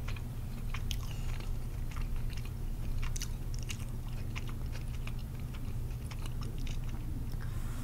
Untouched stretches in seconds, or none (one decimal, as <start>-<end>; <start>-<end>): 4.2-5.2; 6.3-7.8